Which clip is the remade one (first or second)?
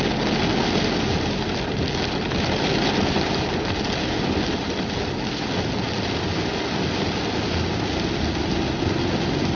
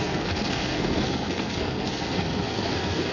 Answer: second